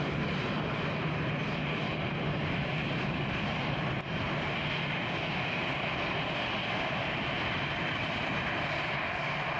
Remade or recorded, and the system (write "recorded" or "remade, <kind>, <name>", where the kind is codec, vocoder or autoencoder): remade, vocoder, BigVGAN v2